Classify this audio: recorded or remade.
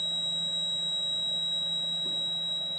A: recorded